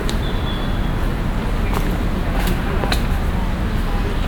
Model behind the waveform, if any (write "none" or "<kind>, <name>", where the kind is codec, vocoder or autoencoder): none